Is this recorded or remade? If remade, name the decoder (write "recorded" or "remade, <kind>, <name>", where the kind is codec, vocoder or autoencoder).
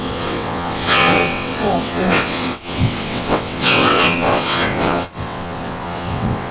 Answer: remade, vocoder, WaveNeXt